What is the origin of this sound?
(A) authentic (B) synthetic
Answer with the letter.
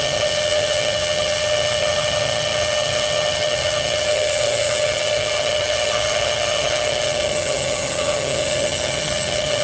B